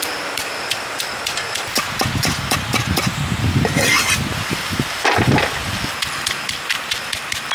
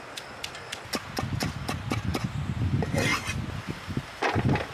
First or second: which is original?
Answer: second